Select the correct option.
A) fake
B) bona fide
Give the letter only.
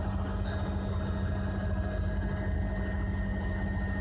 B